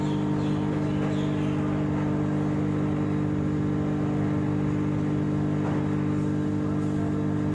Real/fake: real